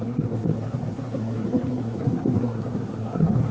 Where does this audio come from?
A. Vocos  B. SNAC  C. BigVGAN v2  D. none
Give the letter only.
B